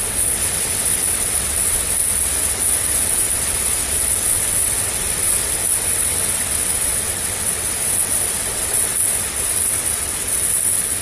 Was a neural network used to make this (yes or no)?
yes